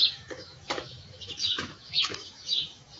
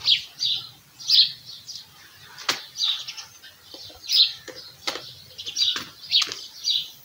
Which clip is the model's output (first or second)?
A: first